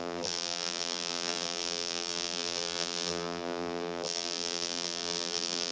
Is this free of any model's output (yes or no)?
no